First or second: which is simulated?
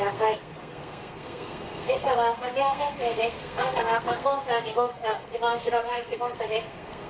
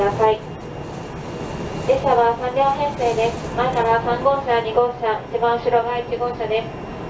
first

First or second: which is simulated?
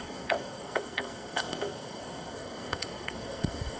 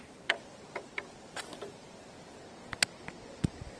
first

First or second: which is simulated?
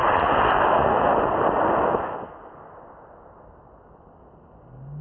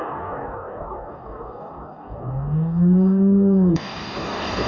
second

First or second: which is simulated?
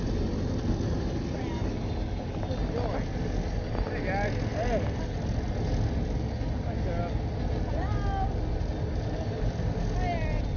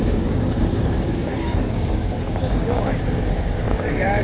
second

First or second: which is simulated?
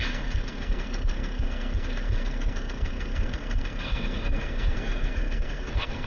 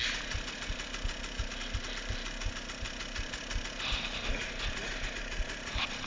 first